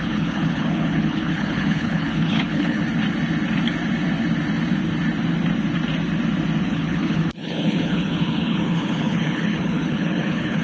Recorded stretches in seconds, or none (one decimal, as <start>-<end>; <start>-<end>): 2.8-6.6